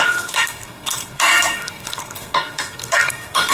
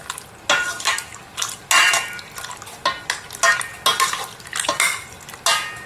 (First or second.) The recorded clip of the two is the second